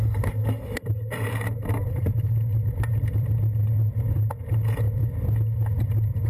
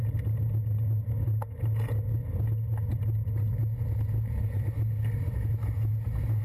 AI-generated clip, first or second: first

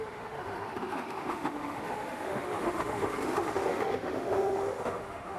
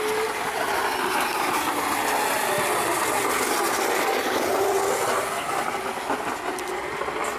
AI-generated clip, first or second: first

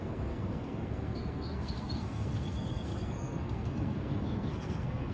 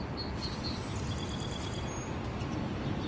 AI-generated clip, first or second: first